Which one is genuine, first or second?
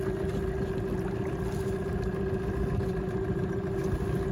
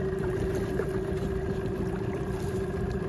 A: first